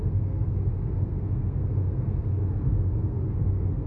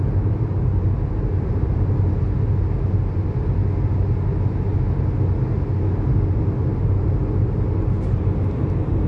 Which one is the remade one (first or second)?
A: first